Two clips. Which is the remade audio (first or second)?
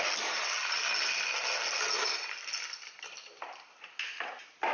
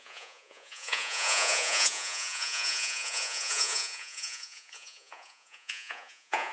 second